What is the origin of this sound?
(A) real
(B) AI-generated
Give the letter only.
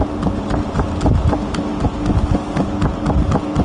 A